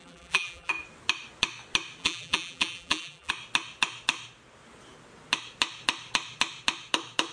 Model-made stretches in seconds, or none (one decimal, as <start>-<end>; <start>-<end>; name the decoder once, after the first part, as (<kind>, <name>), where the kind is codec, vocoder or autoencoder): 0.0-0.7 (vocoder, BigVGAN v2); 2.0-3.3